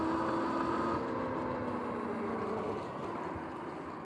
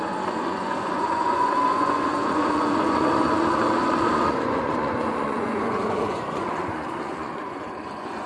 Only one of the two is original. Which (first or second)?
first